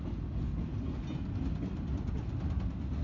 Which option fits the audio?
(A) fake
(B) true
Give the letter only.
B